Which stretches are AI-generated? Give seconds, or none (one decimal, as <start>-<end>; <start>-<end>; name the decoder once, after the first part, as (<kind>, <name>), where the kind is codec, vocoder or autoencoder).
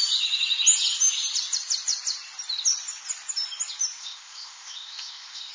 4.0-5.5 (codec, ZipCodec)